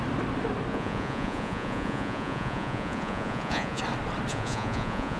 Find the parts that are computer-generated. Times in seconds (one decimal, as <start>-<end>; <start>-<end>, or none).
0.7-3.8; 4.3-5.2